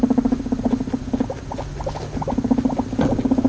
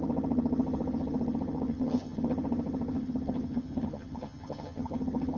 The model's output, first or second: second